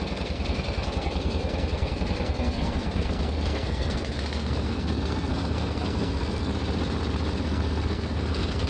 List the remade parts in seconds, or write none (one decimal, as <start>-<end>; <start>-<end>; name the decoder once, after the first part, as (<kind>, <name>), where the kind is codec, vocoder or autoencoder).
0.0-6.5 (codec, SNAC); 7.4-8.7